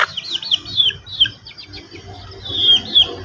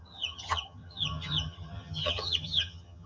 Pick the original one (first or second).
first